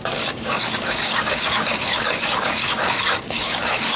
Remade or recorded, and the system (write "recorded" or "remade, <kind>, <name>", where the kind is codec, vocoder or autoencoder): remade, codec, DAC